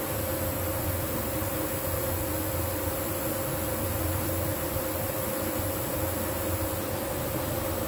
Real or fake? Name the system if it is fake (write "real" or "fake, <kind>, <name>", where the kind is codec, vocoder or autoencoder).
real